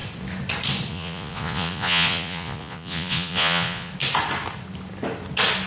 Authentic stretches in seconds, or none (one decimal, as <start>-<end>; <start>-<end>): 0.0-0.9; 3.9-5.7